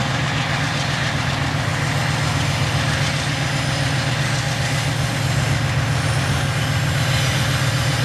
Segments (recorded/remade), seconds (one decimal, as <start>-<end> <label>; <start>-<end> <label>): 0.0-1.7 remade; 1.7-5.1 recorded; 5.1-8.0 remade